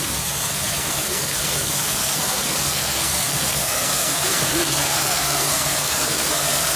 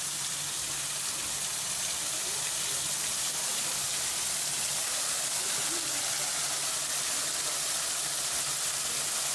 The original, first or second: second